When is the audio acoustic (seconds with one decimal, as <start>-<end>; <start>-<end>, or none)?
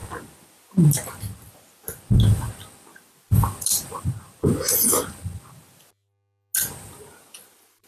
0.0-7.9